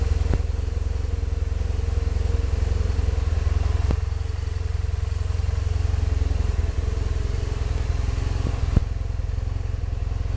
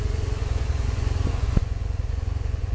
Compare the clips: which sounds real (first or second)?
first